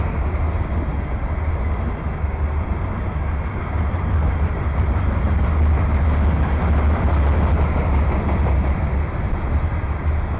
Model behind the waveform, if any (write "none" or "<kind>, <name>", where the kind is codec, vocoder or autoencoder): none